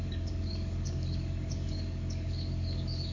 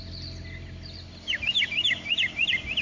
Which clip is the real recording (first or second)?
second